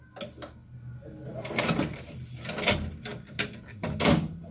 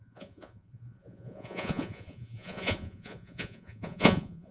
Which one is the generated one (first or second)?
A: second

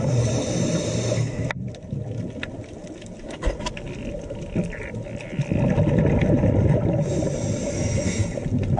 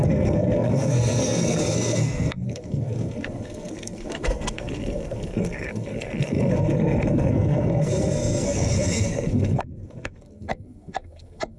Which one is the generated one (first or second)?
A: second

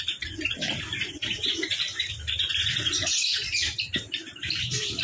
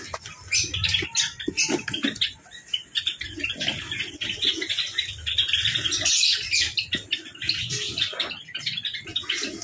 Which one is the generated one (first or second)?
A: first